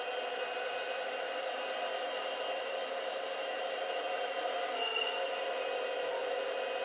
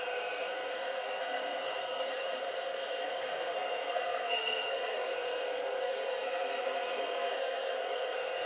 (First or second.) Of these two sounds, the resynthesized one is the second